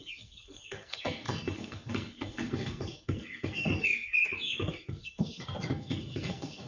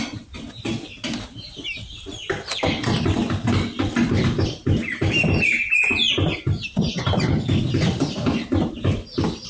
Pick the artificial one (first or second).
first